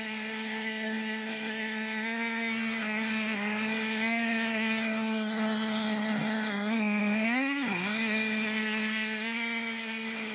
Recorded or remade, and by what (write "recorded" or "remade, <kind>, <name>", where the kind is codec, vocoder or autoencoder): remade, codec, SNAC